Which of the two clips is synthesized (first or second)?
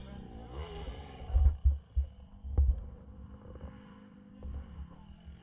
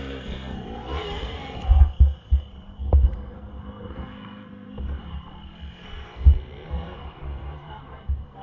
second